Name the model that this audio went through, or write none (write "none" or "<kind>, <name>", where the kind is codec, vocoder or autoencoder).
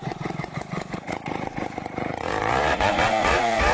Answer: vocoder, Vocos